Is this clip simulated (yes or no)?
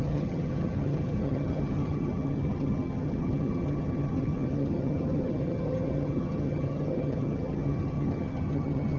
yes